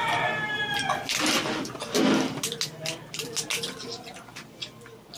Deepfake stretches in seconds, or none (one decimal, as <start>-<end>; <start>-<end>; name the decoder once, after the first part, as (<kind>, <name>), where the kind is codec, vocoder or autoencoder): none